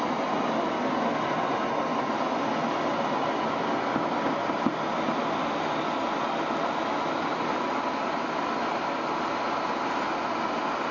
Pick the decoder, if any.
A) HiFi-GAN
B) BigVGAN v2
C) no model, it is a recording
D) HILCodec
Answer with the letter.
C